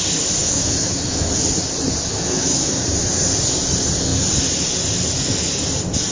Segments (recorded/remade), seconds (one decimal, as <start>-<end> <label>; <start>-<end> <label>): 0.0-0.4 recorded; 0.4-1.2 remade; 1.2-2.1 recorded; 2.1-2.7 remade; 2.7-6.1 recorded